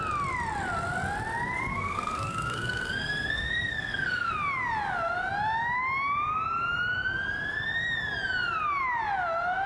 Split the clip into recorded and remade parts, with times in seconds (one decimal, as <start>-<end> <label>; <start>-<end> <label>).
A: 0.0-1.7 recorded; 1.7-4.3 remade; 4.3-9.7 recorded